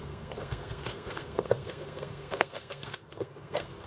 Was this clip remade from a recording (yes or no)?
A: yes